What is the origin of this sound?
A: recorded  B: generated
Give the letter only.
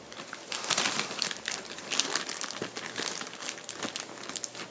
A